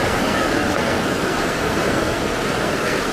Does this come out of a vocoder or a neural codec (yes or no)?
yes